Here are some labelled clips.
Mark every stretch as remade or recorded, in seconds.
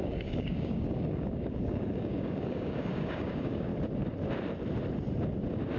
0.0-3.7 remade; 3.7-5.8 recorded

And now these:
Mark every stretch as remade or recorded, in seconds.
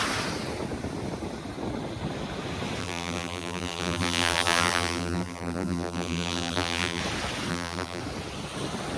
0.0-2.8 recorded; 2.8-7.0 remade; 7.0-7.5 recorded; 7.5-8.0 remade; 8.0-9.0 recorded